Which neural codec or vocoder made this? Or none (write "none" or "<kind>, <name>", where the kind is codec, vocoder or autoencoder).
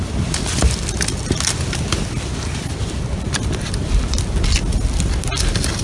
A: none